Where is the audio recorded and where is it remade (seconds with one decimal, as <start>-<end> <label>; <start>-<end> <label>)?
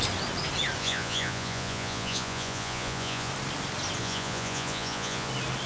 0.0-0.8 recorded; 0.8-3.3 remade; 3.3-4.0 recorded; 4.0-5.3 remade; 5.3-5.7 recorded